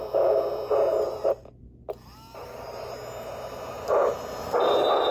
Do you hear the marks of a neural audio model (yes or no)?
no